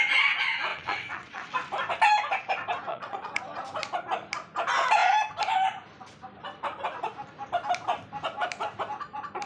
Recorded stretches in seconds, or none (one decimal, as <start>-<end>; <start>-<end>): 0.0-0.7; 1.5-2.9; 3.4-9.5